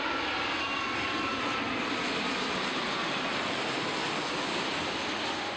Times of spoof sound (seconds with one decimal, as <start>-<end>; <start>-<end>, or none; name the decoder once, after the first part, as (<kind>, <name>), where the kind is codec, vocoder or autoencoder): none